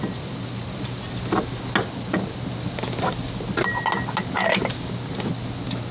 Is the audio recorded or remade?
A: recorded